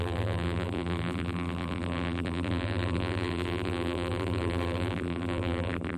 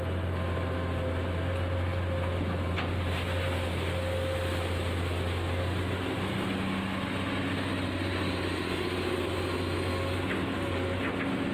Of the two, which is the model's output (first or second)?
first